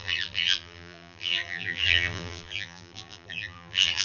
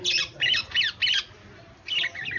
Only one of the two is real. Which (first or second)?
second